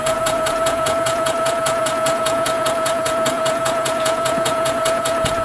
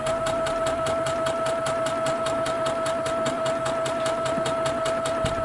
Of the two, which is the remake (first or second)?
first